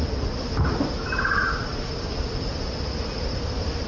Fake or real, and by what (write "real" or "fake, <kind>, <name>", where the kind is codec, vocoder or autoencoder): real